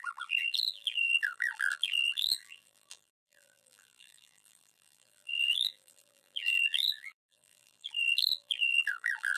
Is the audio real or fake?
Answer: fake